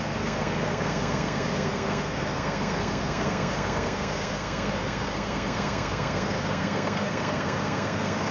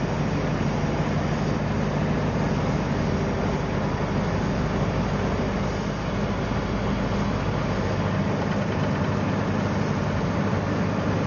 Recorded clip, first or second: second